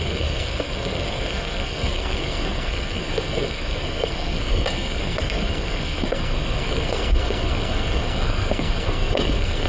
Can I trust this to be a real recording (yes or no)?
no